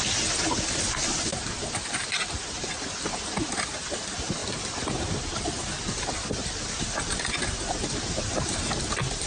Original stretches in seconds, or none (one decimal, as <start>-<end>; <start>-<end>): 0.0-1.3; 3.0-4.4; 5.2-9.3